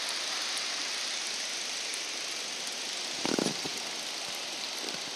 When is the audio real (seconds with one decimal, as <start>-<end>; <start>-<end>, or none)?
0.0-0.8; 1.9-5.2